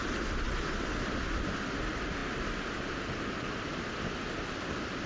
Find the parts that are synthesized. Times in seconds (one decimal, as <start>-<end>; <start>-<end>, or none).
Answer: none